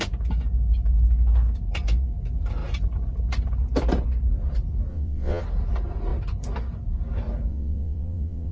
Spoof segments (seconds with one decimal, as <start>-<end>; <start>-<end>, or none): 4.9-5.4; 7.5-8.5